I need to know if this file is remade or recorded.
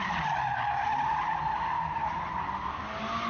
recorded